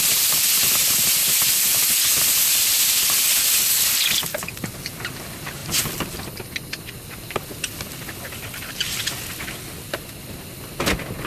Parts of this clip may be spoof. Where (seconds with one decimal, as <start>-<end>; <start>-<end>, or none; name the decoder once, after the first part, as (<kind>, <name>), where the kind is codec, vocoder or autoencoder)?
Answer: none